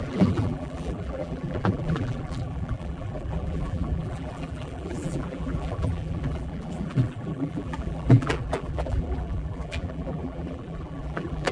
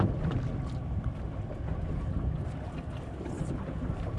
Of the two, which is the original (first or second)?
second